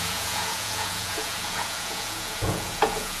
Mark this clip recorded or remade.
remade